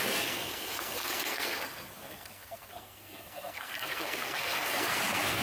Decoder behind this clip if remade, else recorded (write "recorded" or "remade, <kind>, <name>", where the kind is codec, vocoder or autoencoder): remade, codec, SNAC